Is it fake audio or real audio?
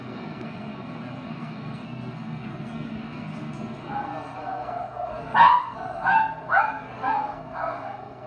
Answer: fake